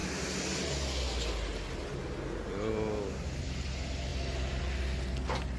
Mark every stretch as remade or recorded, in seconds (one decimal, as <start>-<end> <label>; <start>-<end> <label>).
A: 0.0-5.6 recorded